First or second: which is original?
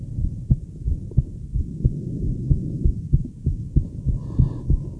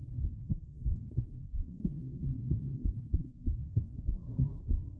first